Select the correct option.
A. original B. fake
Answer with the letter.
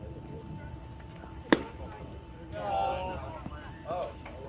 A